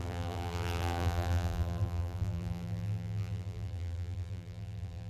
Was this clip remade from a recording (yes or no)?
yes